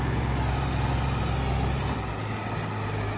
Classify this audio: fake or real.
real